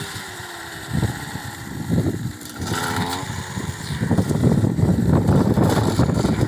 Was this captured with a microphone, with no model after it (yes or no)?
no